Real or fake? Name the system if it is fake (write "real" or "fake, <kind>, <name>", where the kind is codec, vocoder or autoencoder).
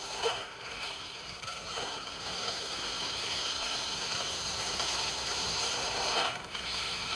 fake, codec, SNAC